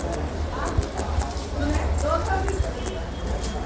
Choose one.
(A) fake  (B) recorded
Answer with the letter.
A